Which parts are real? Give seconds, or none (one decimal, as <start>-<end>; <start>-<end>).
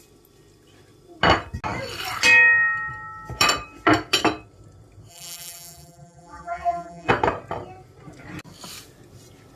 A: 0.0-5.1; 7.1-9.6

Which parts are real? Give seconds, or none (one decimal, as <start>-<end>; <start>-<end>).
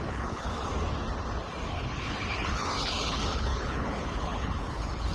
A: 0.7-1.7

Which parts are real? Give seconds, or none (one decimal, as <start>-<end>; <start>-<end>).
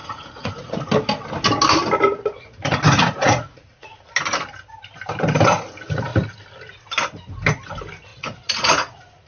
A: 0.7-2.6; 4.1-8.1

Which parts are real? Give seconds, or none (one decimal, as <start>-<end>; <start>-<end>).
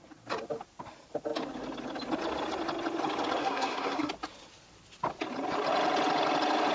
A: 0.0-3.4; 4.1-6.7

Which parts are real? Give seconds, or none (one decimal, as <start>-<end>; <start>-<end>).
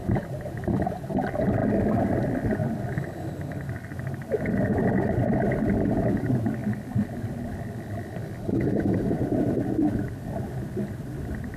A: 0.0-2.6; 3.7-6.6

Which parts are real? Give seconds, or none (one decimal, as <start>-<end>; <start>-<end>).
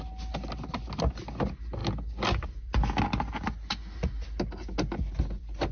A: 0.0-5.7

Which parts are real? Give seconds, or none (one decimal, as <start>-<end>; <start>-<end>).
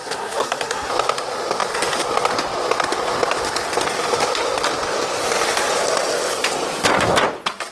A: 0.9-7.7